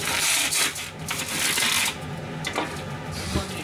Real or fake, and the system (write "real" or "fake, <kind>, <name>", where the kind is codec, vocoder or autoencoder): real